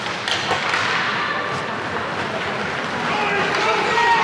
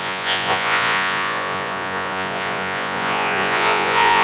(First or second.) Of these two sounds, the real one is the first